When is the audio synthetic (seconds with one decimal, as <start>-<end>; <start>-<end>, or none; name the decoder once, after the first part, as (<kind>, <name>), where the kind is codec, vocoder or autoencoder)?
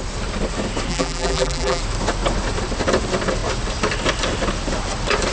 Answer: 0.9-1.8 (vocoder, BigVGAN v2)